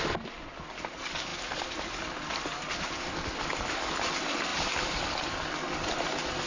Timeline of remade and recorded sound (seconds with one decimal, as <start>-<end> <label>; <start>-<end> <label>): 0.0-6.5 recorded